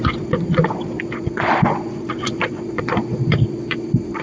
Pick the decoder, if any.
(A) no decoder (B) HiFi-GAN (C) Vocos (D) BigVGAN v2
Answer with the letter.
C